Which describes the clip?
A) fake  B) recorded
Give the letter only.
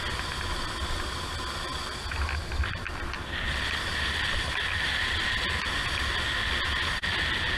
B